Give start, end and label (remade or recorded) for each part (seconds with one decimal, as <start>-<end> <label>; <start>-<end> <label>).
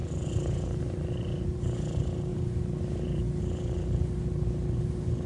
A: 0.0-5.3 recorded